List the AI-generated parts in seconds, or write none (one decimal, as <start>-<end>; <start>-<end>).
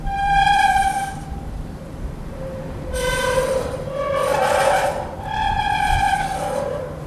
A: 0.0-4.3; 5.2-7.1